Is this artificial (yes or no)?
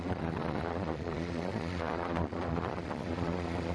yes